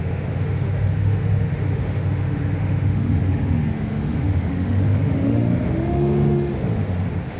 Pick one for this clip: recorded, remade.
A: remade